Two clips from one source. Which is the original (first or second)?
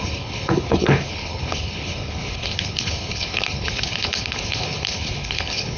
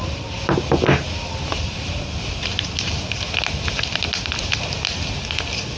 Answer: second